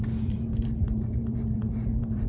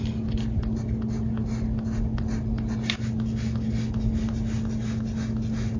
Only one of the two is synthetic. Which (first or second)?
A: first